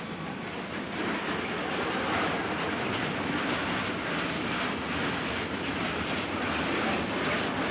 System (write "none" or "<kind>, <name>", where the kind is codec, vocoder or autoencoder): none